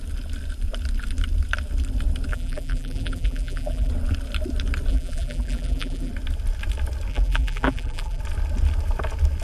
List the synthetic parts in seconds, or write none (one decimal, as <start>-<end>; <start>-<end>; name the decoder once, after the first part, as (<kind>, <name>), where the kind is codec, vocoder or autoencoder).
2.3-3.9 (vocoder, BigVGAN v2); 4.9-6.1; 7.1-8.2